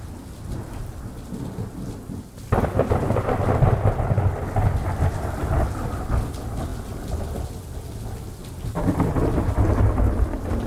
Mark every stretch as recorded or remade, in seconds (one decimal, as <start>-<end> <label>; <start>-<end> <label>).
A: 0.0-10.7 recorded